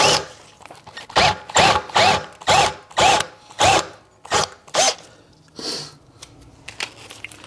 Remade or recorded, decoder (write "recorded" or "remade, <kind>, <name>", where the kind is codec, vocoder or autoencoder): recorded